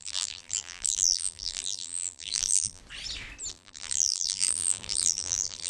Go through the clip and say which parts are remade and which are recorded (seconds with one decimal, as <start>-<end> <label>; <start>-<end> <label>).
0.0-2.8 remade; 2.8-3.5 recorded; 3.5-5.7 remade